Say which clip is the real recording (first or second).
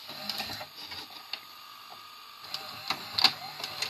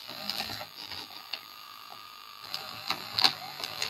first